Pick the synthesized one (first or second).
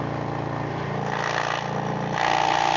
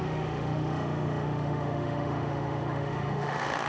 second